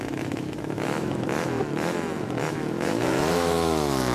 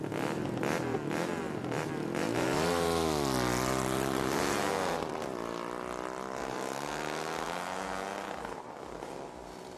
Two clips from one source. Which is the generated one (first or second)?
first